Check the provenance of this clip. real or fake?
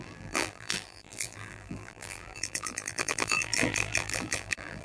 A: fake